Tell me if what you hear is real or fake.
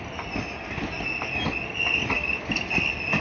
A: real